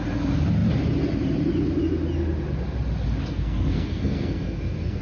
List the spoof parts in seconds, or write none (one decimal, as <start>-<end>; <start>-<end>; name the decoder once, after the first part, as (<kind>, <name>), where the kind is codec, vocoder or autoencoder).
3.2-5.0 (codec, SNAC)

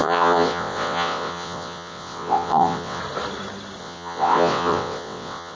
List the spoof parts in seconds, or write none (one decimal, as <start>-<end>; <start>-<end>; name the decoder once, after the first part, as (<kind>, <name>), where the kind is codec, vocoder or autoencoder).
0.0-3.0 (vocoder, WaveNeXt); 3.8-5.6

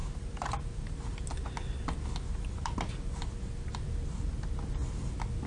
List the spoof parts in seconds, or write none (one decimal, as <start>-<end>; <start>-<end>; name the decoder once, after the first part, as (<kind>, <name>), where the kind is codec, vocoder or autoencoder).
0.0-0.5 (vocoder, BigVGAN v2)

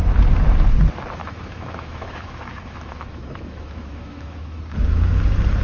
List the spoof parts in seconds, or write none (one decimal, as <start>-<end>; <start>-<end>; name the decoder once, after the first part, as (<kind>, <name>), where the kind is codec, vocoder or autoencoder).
1.2-4.6 (autoencoder, DAC-VAE)

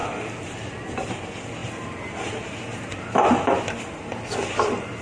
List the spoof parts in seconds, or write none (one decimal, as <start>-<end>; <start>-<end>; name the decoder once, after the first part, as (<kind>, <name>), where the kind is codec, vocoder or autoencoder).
none

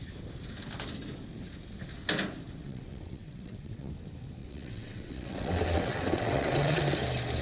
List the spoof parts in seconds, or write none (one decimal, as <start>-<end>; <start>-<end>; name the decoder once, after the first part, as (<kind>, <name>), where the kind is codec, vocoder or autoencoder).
2.6-3.9 (vocoder, WaveNeXt); 4.4-6.8

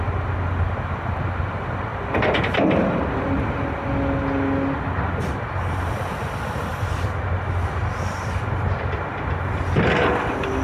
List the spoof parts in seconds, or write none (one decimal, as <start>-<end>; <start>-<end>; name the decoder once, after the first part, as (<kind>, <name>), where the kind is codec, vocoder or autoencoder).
none

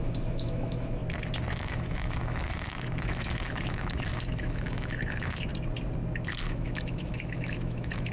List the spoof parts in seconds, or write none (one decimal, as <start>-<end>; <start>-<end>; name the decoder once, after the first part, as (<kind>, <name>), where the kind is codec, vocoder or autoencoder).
0.0-1.0 (autoencoder, DAC-VAE); 1.7-5.5; 6.4-8.1